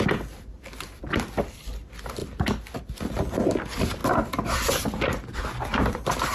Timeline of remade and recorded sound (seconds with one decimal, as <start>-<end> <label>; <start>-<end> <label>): 0.0-6.3 recorded